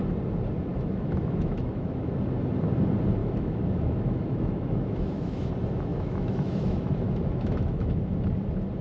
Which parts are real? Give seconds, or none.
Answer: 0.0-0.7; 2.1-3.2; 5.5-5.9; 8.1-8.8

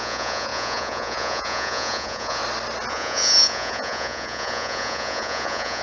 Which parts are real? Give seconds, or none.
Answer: 2.4-2.9

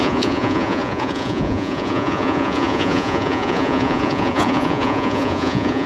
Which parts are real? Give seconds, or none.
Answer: none